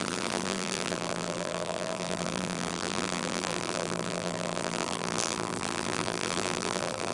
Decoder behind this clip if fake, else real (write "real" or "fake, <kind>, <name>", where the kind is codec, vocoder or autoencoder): fake, vocoder, BigVGAN v2